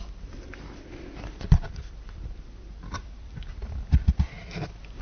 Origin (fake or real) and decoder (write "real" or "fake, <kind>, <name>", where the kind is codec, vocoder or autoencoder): fake, vocoder, BigVGAN v2